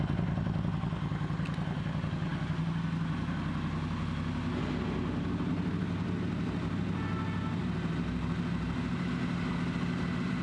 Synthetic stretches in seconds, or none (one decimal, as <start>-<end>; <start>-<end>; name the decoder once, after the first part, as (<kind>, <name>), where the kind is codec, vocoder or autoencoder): none